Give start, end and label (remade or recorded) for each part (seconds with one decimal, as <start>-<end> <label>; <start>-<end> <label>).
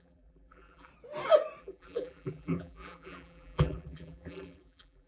0.0-0.9 remade; 0.9-1.6 recorded; 1.6-5.1 remade